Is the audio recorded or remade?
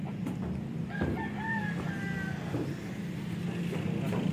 recorded